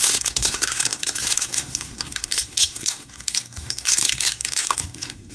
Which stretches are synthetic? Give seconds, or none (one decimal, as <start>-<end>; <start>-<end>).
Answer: 0.0-5.3